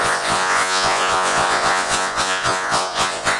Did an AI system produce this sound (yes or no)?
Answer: yes